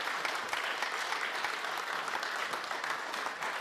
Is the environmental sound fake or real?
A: real